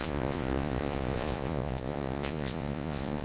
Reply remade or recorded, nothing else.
remade